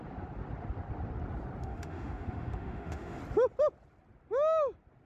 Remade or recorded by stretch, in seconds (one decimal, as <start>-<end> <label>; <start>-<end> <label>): 0.0-1.6 recorded; 1.6-3.2 remade; 3.2-5.1 recorded